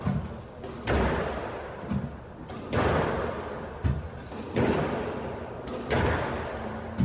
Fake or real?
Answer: real